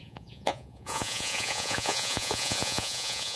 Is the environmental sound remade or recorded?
remade